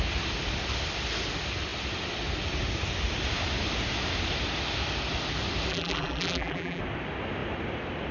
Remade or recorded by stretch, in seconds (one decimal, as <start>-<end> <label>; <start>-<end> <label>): 0.0-5.7 recorded; 5.7-6.8 remade; 6.8-8.1 recorded